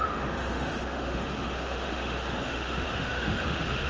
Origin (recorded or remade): remade